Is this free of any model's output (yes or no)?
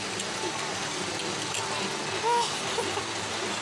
yes